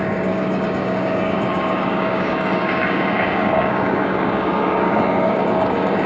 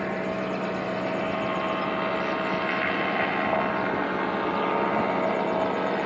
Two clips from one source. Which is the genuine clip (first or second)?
second